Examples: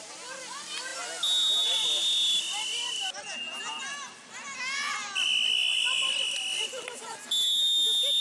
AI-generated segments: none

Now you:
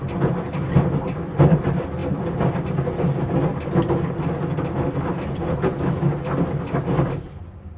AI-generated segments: none

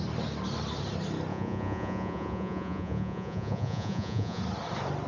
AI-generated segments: 1.3-4.4 (vocoder, Vocos)

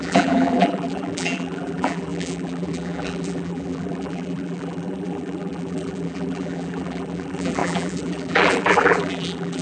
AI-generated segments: 0.0-9.6 (vocoder, BigVGAN v2)

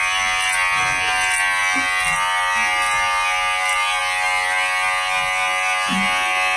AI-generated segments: none

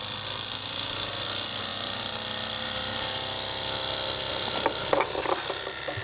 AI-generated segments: none

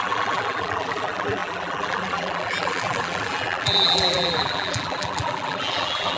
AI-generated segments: 0.0-6.2 (vocoder, BigVGAN v2)